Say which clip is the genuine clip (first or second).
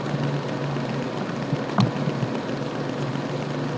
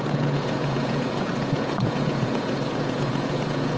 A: first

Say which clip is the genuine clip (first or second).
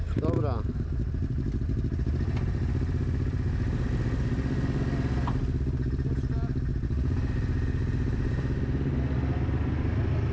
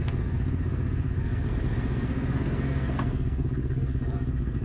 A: first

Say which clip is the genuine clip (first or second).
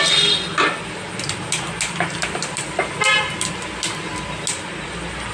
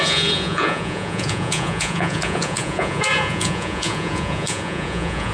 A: first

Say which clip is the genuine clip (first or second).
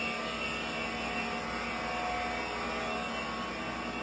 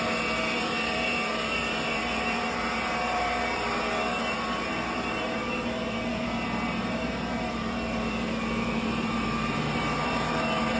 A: first